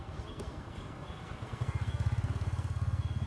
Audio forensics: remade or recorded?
remade